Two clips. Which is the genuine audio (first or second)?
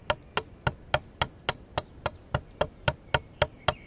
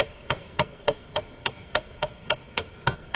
first